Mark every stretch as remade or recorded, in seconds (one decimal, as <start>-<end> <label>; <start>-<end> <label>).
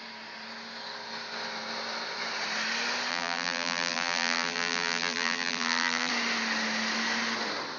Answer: 0.0-3.1 recorded; 3.1-6.1 remade; 6.1-7.8 recorded